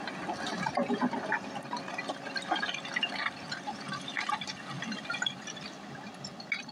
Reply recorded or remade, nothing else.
recorded